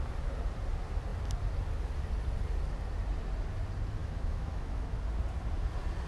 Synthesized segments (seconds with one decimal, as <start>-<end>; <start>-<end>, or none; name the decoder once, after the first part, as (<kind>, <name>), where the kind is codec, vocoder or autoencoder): 4.0-5.0 (autoencoder, DAC-VAE)